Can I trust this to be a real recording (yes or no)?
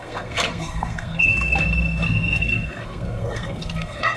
no